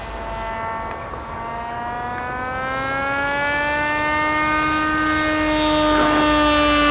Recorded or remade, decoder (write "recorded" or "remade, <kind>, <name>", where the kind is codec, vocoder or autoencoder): recorded